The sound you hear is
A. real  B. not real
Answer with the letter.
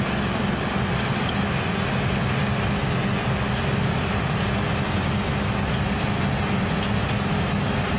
A